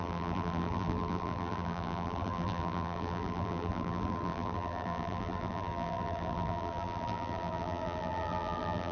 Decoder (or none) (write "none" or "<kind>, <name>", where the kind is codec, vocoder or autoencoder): vocoder, BigVGAN v2